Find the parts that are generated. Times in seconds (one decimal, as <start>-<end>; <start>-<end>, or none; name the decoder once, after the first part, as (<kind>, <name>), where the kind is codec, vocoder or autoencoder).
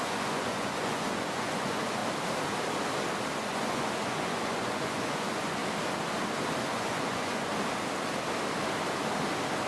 0.0-2.0 (vocoder, Vocos); 3.4-5.6; 6.6-7.5